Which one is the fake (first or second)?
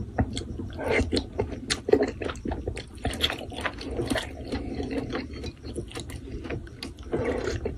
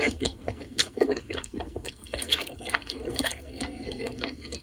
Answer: second